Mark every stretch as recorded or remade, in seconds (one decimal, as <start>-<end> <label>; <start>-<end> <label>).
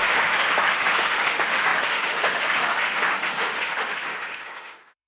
0.0-5.1 remade